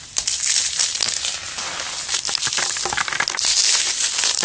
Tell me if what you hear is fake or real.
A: real